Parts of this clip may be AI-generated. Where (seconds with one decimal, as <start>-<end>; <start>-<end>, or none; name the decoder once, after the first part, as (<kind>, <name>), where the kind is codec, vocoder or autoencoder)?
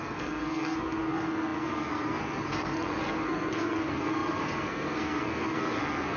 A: 0.0-6.2 (codec, SNAC)